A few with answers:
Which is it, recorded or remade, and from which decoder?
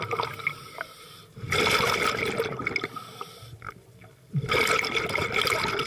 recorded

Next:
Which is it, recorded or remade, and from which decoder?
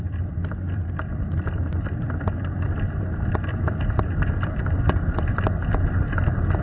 recorded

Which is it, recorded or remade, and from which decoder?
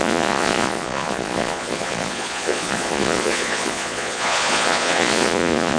remade, vocoder, Vocos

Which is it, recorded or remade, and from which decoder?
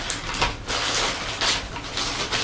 recorded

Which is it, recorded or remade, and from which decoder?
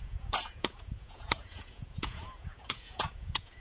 remade, vocoder, Vocos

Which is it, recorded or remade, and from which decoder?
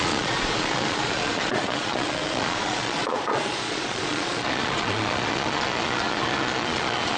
remade, vocoder, Vocos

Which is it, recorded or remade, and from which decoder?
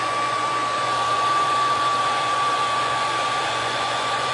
remade, vocoder, Vocos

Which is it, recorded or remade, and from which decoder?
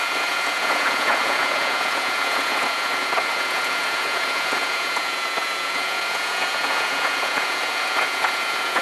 remade, vocoder, Vocos